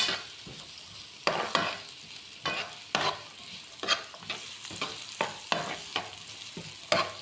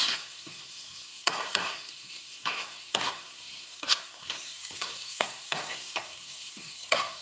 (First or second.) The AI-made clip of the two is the second